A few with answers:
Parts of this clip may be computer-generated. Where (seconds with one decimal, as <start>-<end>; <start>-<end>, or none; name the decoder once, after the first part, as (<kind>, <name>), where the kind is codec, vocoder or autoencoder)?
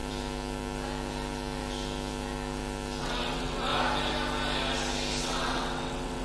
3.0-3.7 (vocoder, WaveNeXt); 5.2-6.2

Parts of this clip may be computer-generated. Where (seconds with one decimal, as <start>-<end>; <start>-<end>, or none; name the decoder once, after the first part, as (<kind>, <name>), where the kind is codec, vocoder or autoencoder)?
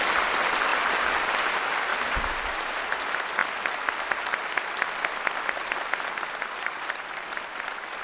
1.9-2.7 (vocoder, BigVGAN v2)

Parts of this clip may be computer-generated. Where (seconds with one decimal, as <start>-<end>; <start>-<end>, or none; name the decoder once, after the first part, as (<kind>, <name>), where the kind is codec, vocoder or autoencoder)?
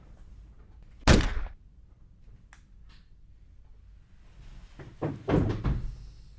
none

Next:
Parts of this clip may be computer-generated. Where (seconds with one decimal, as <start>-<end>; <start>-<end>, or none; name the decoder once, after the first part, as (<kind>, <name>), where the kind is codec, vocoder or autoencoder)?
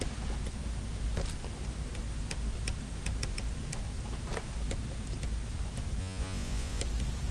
6.0-6.8 (vocoder, Vocos)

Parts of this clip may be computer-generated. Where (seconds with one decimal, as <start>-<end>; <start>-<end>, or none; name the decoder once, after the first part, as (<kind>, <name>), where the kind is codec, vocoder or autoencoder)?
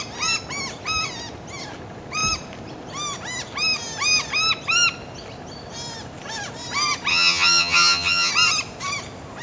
7.1-8.3 (vocoder, HiFi-GAN)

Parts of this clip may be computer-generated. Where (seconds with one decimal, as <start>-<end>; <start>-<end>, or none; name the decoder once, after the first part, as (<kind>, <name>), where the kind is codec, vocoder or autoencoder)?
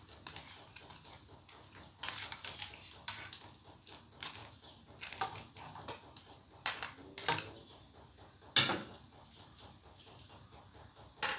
none